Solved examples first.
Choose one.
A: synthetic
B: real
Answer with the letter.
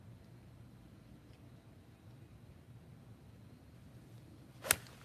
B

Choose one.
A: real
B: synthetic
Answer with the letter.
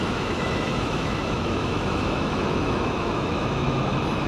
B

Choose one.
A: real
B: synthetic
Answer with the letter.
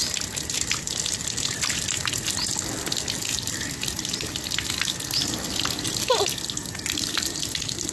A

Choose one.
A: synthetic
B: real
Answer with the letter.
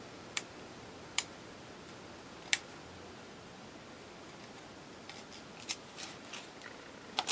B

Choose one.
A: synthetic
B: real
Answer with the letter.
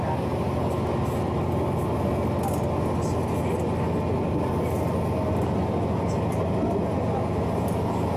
B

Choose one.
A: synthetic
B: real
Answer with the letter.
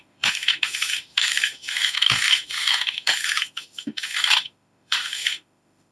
A